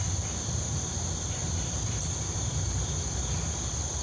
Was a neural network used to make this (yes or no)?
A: no